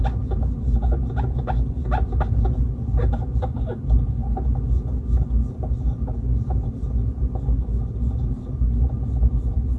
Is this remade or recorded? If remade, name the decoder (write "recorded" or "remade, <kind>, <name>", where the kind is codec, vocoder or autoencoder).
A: recorded